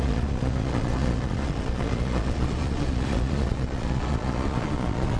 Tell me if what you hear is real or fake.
fake